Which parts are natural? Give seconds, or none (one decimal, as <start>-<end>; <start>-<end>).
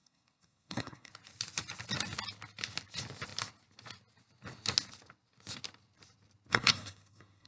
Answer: 1.1-6.5